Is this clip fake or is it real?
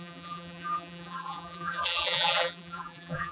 fake